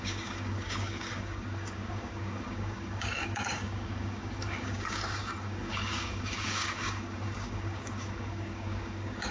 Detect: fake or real fake